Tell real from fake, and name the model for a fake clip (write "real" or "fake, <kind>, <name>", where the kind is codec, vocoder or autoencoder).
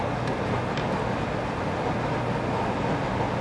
real